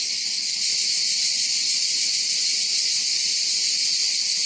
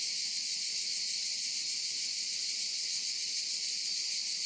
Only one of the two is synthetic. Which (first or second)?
first